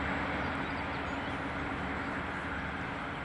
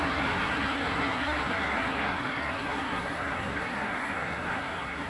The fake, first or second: second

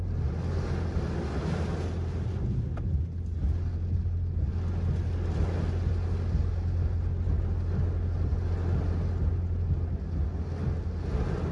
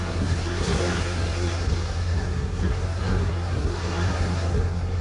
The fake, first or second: second